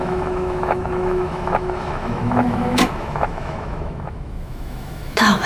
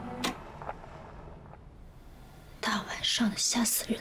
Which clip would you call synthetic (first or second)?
first